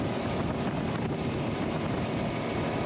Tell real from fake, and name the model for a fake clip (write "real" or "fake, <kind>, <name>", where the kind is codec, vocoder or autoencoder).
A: fake, vocoder, BigVGAN v2